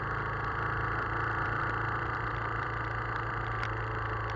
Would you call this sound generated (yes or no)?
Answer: yes